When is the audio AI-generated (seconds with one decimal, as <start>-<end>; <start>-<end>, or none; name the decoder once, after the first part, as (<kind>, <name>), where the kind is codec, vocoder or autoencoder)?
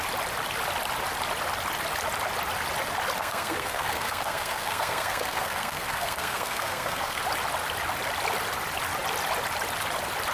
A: 3.2-7.2 (codec, SNAC)